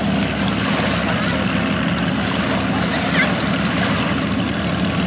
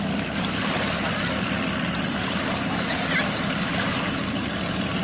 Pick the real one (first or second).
first